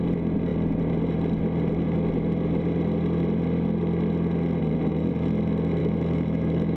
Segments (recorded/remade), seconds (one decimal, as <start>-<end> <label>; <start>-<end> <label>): 0.0-5.8 recorded; 5.8-6.8 remade